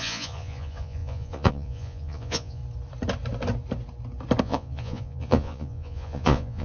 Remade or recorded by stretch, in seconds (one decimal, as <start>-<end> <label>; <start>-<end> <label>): 0.0-2.6 remade; 2.6-4.4 recorded; 4.4-6.6 remade